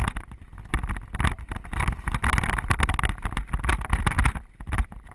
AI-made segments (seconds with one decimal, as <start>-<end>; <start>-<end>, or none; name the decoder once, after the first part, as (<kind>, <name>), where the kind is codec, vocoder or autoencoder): none